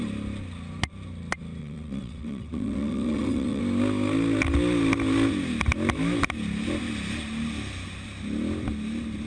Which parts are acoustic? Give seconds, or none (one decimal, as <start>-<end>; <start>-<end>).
0.0-1.6; 3.6-9.3